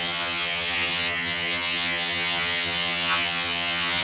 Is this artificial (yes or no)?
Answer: yes